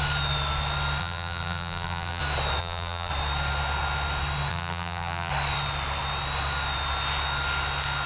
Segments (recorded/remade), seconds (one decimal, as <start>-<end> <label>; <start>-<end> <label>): 0.0-1.0 recorded; 1.0-2.2 remade; 2.2-2.6 recorded; 2.6-3.1 remade; 3.1-4.5 recorded; 4.5-5.3 remade; 5.3-8.1 recorded